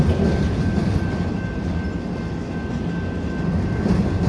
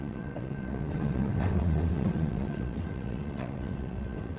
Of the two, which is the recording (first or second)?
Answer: first